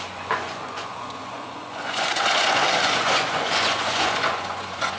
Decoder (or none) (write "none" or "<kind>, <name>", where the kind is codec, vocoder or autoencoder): vocoder, Vocos